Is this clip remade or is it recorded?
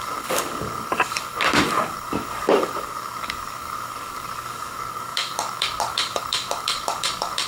remade